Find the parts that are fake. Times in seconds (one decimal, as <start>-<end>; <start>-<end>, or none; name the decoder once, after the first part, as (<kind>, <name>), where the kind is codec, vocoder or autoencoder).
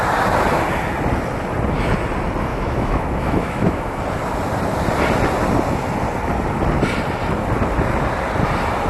2.5-4.0 (autoencoder, DAC-VAE)